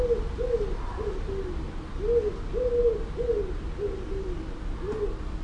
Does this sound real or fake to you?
real